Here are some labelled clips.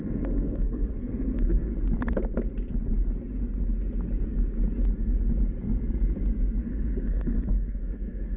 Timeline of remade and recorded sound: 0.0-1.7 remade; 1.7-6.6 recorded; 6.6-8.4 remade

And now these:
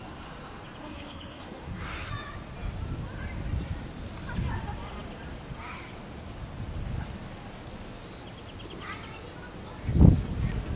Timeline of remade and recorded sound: 0.0-0.8 recorded; 0.8-2.1 remade; 2.1-10.8 recorded

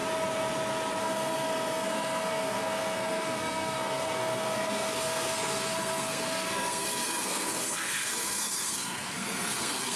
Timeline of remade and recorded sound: 0.0-1.0 recorded; 1.0-10.0 remade